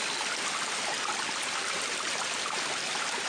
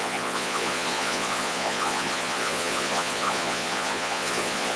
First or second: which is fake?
second